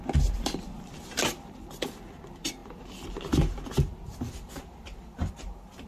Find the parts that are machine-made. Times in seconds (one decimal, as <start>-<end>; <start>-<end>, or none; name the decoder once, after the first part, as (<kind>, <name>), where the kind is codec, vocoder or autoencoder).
none